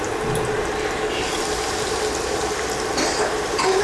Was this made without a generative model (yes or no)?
yes